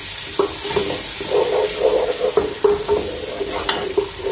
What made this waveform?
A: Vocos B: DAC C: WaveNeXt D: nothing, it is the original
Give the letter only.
D